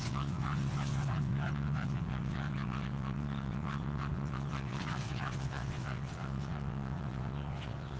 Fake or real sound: fake